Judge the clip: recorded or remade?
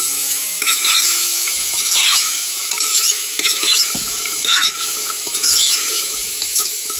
remade